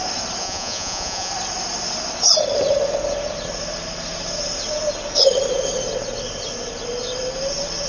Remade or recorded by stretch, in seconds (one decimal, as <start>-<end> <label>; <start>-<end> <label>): 0.0-0.4 recorded; 0.4-1.3 remade; 1.3-7.9 recorded